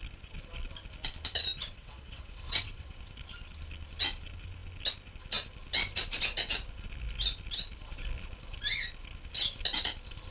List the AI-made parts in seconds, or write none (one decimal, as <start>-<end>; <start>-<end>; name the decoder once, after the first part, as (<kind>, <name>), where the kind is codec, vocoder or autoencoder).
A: 1.6-3.0 (vocoder, WaveNeXt)